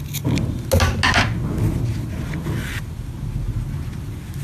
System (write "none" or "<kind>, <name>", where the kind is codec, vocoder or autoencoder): none